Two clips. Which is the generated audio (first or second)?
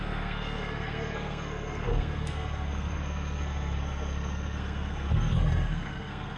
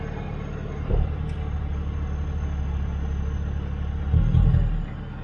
first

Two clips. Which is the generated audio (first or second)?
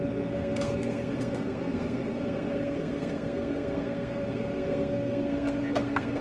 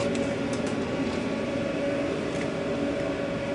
first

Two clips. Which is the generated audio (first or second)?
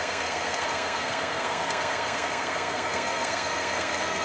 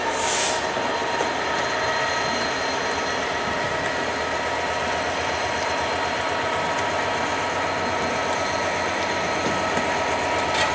first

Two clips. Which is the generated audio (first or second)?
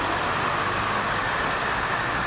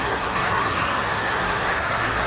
second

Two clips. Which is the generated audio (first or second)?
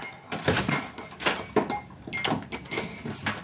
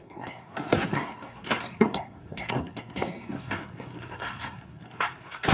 second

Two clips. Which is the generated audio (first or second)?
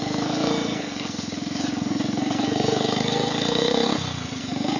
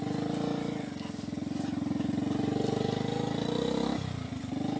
first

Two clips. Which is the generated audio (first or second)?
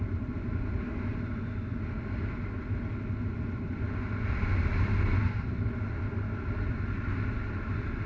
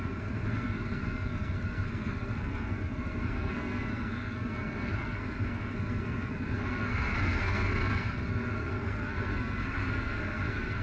second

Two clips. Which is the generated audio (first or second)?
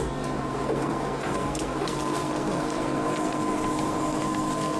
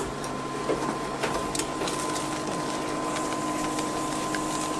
first